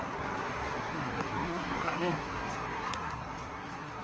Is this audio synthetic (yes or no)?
yes